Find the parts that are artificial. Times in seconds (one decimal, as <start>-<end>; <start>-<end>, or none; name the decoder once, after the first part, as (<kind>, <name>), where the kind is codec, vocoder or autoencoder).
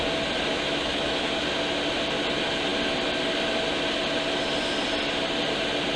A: 0.5-1.4 (autoencoder, DAC-VAE)